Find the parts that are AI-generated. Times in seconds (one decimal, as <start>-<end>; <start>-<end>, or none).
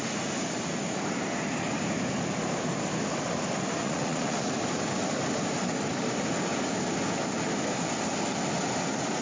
3.8-4.5